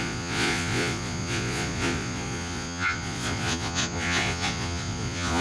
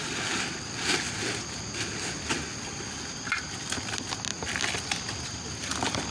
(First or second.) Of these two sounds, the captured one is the second